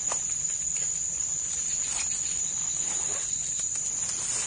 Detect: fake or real real